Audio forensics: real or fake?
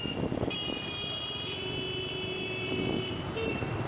real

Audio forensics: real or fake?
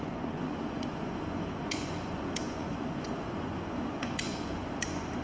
fake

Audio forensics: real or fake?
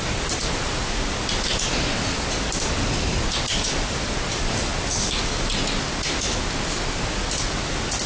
real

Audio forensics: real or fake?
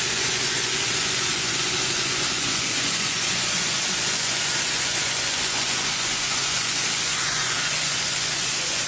fake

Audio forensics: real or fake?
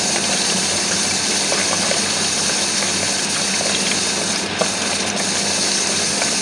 real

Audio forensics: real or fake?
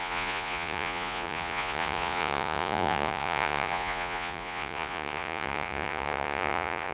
fake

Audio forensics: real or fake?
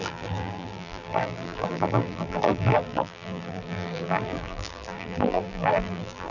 fake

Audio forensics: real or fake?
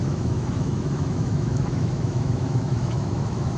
fake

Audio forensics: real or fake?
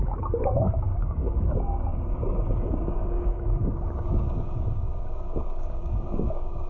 fake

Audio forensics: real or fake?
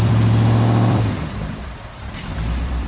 fake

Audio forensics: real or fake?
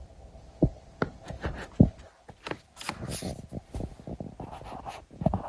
real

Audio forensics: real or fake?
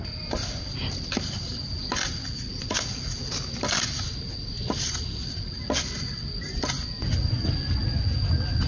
real